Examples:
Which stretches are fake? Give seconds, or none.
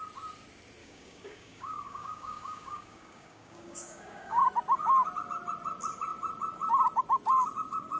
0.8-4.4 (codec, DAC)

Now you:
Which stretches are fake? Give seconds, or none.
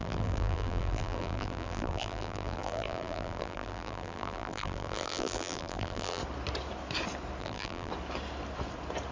0.0-6.2 (vocoder, BigVGAN v2); 7.4-7.9